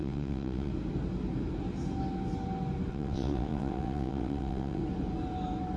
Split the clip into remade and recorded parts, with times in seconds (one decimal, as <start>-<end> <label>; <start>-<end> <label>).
0.0-0.7 remade; 0.7-2.9 recorded; 2.9-4.8 remade; 4.8-5.8 recorded